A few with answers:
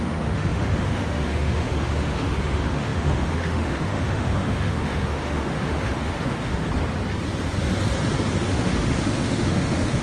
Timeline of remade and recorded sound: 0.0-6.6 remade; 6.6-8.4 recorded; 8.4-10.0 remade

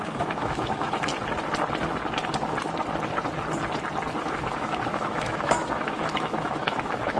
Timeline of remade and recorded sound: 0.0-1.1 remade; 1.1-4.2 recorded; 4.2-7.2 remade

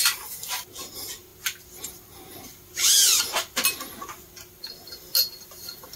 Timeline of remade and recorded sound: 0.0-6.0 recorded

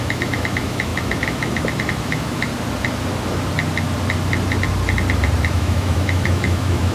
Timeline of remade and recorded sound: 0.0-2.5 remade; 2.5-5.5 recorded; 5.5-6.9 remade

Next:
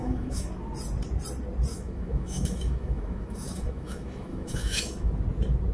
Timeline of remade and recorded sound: 0.0-0.5 remade; 0.5-1.7 recorded; 1.7-5.1 remade; 5.1-5.7 recorded